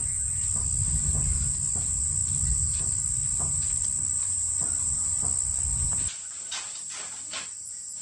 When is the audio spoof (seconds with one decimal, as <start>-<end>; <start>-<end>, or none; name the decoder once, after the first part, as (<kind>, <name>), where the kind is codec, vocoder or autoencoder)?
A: none